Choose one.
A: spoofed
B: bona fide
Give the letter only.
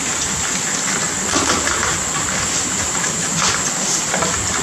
B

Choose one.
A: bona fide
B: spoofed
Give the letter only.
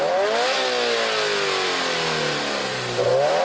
A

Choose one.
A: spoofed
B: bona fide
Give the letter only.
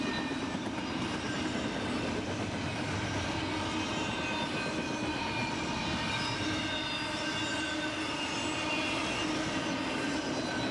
B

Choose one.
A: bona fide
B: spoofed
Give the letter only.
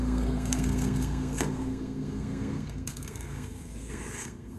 B